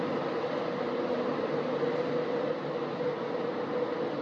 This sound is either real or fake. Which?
real